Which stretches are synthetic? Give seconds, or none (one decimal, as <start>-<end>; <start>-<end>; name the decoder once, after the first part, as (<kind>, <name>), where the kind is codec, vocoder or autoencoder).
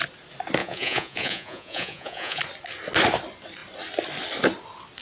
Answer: 0.6-2.4 (vocoder, Vocos)